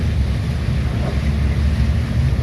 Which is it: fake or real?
real